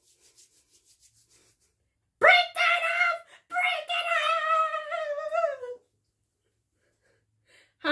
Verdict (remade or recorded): recorded